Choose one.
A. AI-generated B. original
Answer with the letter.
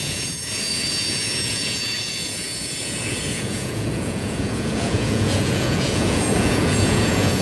A